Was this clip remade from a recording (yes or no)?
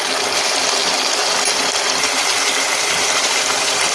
no